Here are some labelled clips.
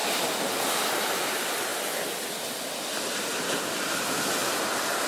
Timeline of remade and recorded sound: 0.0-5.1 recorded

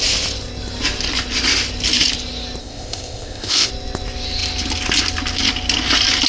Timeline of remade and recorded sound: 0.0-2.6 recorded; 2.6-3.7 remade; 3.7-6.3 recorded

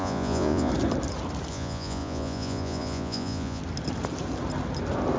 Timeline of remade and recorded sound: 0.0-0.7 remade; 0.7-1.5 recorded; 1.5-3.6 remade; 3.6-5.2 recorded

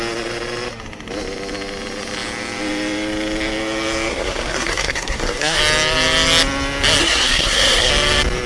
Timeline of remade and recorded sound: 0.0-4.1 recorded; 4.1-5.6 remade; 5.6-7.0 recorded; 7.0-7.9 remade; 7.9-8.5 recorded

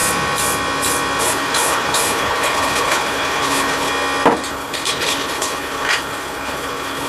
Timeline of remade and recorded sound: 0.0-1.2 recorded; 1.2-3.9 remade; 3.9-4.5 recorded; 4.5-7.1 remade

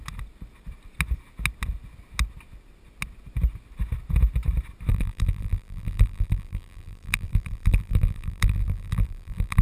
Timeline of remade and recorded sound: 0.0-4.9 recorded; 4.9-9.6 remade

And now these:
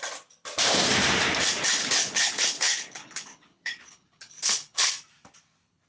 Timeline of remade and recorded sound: 0.0-1.8 recorded; 1.8-4.9 remade; 4.9-5.9 recorded

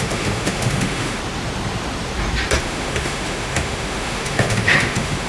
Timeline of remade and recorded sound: 0.0-1.2 remade; 1.2-2.6 recorded; 2.6-5.3 remade